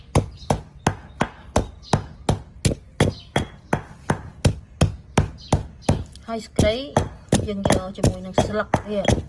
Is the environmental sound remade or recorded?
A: recorded